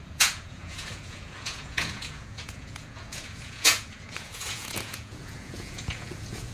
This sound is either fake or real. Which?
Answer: fake